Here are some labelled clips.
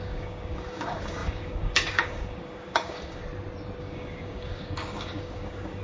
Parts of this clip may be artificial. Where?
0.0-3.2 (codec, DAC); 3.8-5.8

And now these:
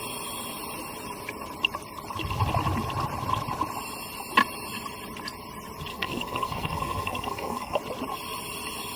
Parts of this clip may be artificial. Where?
5.9-7.8 (codec, SNAC)

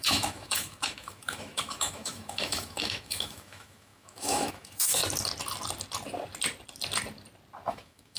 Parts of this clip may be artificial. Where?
0.0-5.0 (autoencoder, DAC-VAE); 7.7-8.2